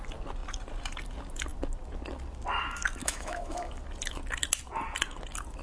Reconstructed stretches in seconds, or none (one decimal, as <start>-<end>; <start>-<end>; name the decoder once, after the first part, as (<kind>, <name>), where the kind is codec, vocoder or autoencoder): 3.0-3.7 (autoencoder, DAC-VAE)

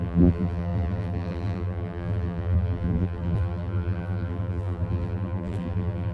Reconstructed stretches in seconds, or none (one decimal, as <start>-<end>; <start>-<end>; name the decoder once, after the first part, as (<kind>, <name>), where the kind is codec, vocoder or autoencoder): 0.0-6.1 (vocoder, BigVGAN v2)

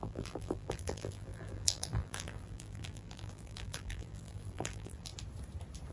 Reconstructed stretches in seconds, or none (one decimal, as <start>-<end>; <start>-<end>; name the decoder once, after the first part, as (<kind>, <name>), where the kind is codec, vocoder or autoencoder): 0.0-5.1 (vocoder, BigVGAN v2)